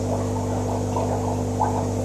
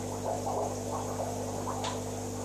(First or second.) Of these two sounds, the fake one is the first